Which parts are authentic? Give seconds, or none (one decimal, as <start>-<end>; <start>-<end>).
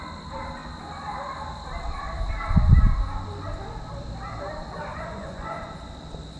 0.0-4.9; 5.7-6.4